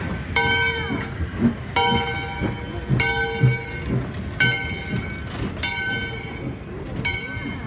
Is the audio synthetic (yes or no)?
no